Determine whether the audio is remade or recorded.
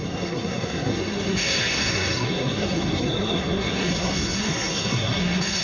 remade